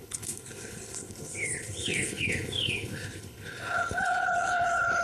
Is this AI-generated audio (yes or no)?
yes